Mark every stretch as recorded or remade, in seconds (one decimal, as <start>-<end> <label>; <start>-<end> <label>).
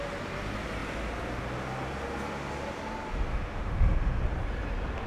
0.0-3.3 recorded; 3.3-4.2 remade; 4.2-5.1 recorded